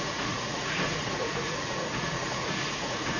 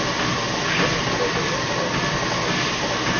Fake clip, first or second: first